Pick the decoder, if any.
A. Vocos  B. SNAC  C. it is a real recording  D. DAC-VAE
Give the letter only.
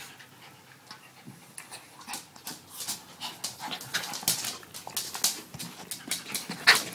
C